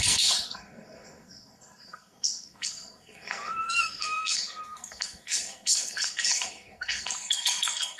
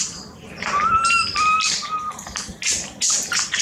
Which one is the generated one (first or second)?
first